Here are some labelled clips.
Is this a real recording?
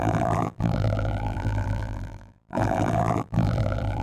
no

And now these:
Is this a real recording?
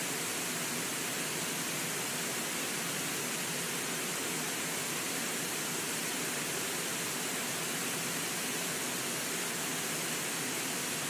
yes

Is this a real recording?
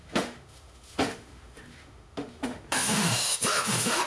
no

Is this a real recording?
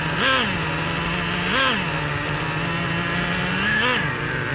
yes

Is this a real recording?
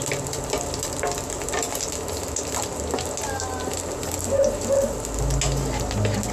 yes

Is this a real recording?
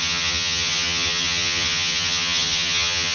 no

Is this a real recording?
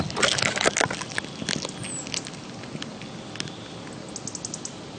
yes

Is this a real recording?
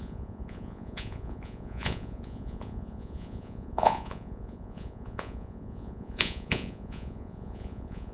no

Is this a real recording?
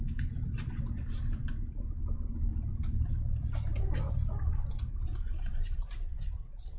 no